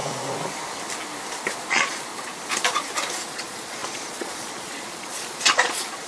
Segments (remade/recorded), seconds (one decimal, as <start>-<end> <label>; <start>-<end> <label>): 0.0-1.7 recorded; 1.7-2.1 remade; 2.1-3.3 recorded; 3.3-6.1 remade